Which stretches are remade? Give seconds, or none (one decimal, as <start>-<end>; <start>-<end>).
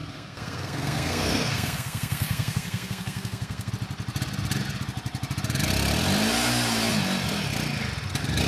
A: 0.0-3.7